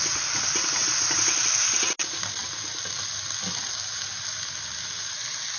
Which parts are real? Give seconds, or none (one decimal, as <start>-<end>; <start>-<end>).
0.0-5.6